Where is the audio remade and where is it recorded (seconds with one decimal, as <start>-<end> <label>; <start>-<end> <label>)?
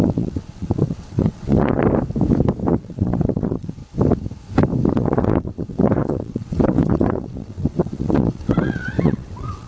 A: 0.0-1.8 remade; 1.8-2.7 recorded; 2.7-3.8 remade; 3.8-4.9 recorded; 4.9-9.7 remade